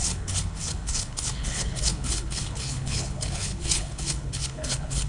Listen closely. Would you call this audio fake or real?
fake